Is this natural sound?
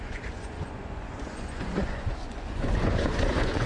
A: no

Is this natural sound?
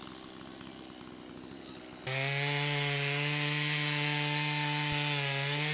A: yes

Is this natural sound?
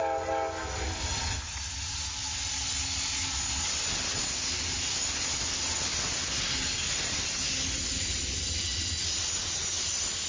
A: yes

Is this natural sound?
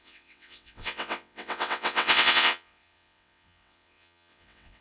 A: no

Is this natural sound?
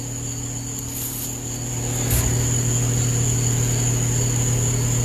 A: yes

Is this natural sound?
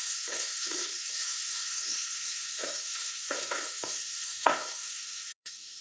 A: no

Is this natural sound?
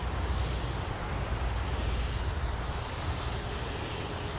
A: yes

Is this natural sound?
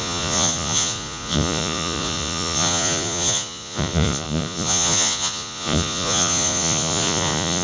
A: no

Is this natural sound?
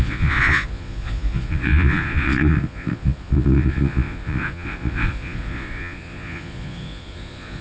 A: no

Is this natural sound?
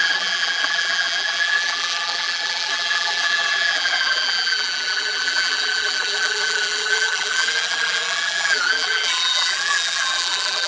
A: no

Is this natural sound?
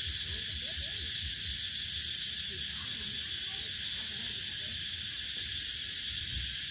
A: yes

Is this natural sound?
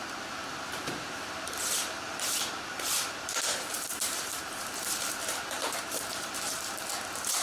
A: no